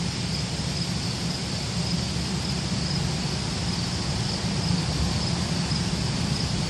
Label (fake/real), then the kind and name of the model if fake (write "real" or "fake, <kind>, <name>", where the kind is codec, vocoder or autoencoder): fake, vocoder, BigVGAN v2